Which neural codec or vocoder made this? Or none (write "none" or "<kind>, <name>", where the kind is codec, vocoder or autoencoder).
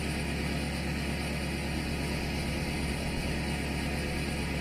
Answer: none